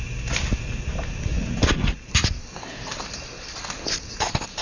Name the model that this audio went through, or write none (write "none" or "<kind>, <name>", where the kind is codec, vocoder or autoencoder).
none